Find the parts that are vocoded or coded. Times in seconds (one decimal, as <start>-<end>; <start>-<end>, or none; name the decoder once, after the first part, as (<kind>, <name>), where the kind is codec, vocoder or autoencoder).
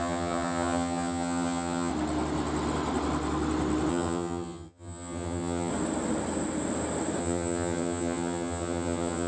0.0-1.9 (vocoder, HiFi-GAN); 3.9-5.7; 7.2-9.3